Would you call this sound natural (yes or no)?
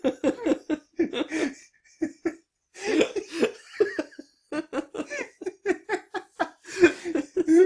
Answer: yes